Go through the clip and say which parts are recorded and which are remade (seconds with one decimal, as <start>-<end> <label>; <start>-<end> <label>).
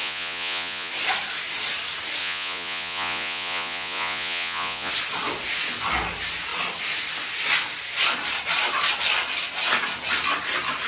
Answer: 0.0-0.9 remade; 0.9-2.2 recorded; 2.2-4.9 remade; 4.9-10.9 recorded